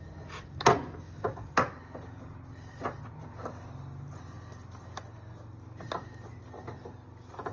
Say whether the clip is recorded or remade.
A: recorded